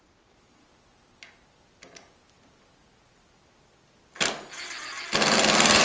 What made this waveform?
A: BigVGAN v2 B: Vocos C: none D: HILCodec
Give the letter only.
C